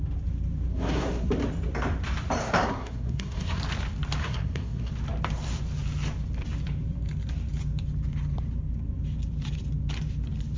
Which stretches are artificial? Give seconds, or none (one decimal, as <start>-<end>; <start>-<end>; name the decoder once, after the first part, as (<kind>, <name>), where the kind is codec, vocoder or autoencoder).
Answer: 0.7-1.3 (codec, SNAC); 2.4-3.6; 4.2-4.9